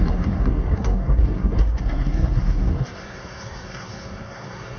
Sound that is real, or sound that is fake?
fake